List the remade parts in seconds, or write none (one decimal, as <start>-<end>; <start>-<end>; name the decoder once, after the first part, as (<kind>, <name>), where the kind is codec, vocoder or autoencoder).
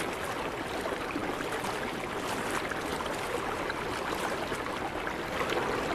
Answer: none